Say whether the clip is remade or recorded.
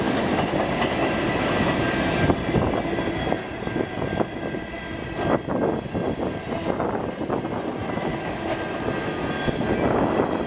recorded